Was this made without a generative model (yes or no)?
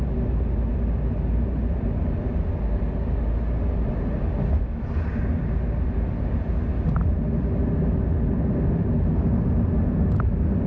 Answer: yes